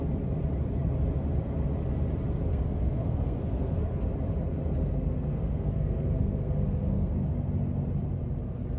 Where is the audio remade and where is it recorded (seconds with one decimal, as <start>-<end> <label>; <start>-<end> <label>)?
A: 0.0-2.5 recorded; 2.5-3.9 remade; 3.9-4.8 recorded; 4.8-7.1 remade; 7.1-8.8 recorded